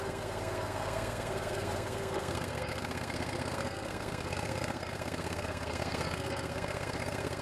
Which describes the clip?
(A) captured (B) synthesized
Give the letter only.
B